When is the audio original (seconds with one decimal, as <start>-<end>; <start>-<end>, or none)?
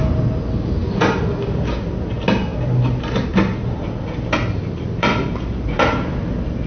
0.0-6.7